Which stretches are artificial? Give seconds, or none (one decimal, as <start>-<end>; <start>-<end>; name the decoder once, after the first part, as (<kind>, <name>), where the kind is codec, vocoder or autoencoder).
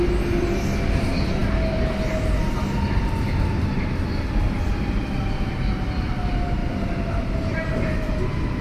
6.6-8.2 (vocoder, BigVGAN v2)